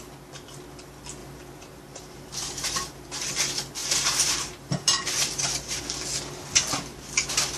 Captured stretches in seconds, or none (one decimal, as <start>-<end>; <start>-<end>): 0.0-1.2; 3.3-3.8; 5.8-7.6